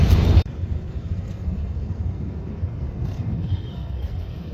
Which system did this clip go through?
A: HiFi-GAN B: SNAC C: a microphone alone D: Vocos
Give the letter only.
B